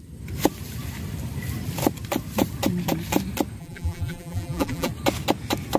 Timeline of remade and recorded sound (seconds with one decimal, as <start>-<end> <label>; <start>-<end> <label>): 0.0-3.6 recorded; 3.6-4.9 remade; 4.9-5.8 recorded